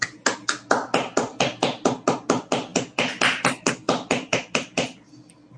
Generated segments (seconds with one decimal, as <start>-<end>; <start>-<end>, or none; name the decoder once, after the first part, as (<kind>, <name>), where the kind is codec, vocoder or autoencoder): 2.7-5.1 (vocoder, BigVGAN v2)